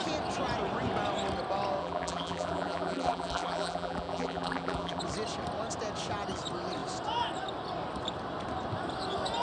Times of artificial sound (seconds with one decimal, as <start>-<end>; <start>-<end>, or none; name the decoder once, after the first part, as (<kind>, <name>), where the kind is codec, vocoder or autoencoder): 1.8-5.0 (vocoder, BigVGAN v2)